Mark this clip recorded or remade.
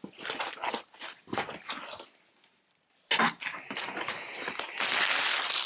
recorded